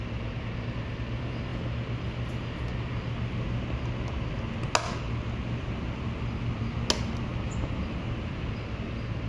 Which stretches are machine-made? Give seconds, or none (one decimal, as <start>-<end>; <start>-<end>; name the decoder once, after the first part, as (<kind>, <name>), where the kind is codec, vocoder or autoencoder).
none